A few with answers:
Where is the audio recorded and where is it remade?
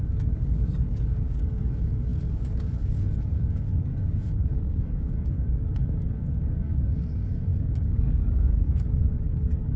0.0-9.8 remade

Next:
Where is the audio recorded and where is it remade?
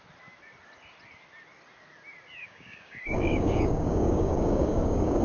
0.0-2.4 recorded; 2.4-5.2 remade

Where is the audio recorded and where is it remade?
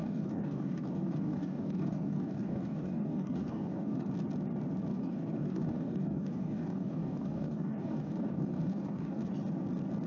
0.0-4.1 remade; 4.1-4.9 recorded; 4.9-9.2 remade; 9.2-10.1 recorded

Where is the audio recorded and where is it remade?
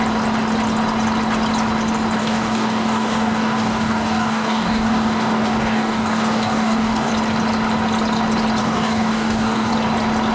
0.0-2.2 recorded; 2.2-7.1 remade; 7.1-8.6 recorded; 8.6-9.7 remade; 9.7-10.3 recorded